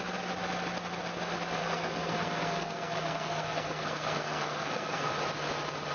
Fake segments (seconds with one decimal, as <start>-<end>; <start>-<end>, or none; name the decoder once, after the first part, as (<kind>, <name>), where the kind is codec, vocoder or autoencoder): 1.6-5.1 (codec, SNAC)